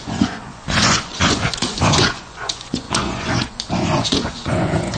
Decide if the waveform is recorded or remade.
remade